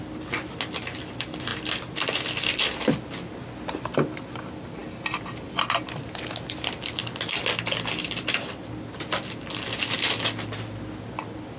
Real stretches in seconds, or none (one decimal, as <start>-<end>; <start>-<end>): 0.0-11.6